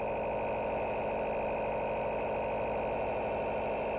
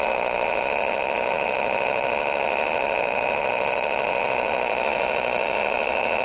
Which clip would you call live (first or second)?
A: first